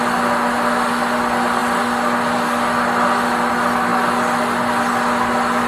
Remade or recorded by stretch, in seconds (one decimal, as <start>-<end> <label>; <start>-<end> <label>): 0.0-5.7 recorded